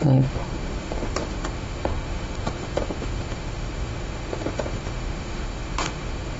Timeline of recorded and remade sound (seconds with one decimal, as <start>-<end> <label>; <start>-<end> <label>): 0.0-6.4 remade